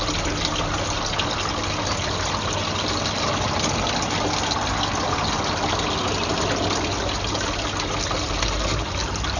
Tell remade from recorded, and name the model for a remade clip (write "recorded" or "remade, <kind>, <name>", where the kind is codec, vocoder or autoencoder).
recorded